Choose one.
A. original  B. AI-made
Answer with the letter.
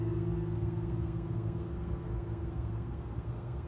B